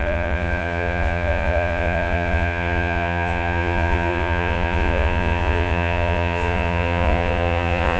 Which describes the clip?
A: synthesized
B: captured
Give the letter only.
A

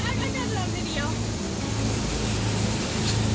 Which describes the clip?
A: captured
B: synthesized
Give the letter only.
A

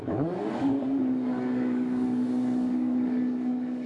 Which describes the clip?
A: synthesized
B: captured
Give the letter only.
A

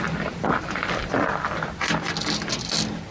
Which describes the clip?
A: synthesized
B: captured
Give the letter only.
B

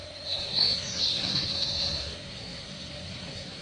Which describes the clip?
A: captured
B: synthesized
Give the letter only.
B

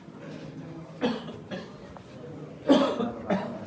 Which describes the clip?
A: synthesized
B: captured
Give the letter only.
B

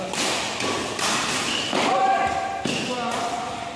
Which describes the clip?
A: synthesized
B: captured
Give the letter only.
B